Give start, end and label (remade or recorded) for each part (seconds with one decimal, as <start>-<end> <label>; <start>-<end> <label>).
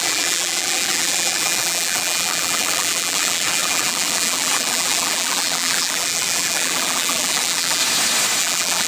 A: 0.0-7.8 remade; 7.8-8.4 recorded; 8.4-8.9 remade